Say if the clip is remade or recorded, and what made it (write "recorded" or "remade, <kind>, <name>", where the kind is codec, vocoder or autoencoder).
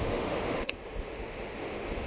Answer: remade, autoencoder, DAC-VAE